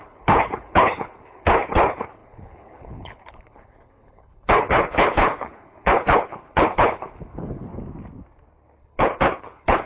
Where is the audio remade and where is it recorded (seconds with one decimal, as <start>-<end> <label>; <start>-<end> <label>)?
0.0-7.7 remade; 7.7-8.8 recorded; 8.8-9.9 remade